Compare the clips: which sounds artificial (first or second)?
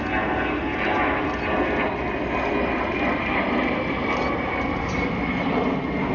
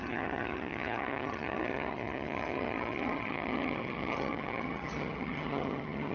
second